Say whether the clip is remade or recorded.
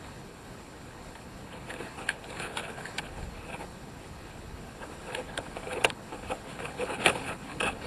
remade